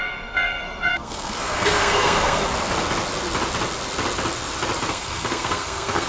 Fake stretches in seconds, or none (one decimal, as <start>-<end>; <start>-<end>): 0.0-2.4; 4.9-6.1